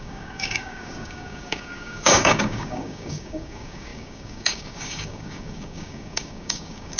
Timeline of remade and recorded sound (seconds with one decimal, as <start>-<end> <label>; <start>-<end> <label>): 0.0-7.0 remade